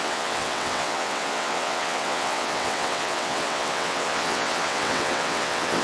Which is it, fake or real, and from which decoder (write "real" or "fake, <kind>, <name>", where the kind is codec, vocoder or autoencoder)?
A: fake, vocoder, WaveNeXt